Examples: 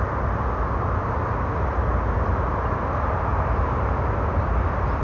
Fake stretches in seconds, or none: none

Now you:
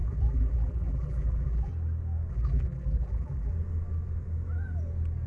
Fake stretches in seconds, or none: 0.0-1.7 (vocoder, BigVGAN v2); 2.3-3.5